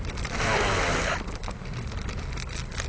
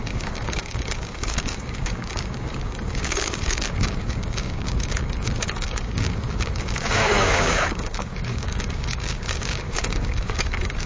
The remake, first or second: second